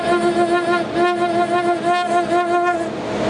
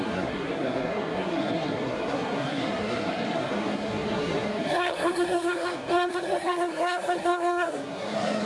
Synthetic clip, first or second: second